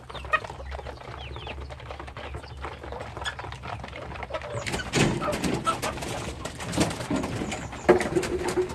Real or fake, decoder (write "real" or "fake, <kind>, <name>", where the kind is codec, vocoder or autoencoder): real